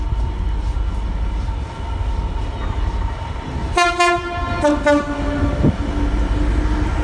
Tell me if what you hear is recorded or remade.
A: recorded